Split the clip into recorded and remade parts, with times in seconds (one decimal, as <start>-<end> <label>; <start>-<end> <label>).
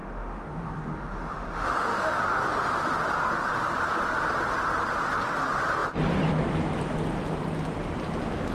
0.0-2.2 remade; 2.2-8.5 recorded